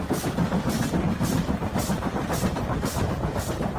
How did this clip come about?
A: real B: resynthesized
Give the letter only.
A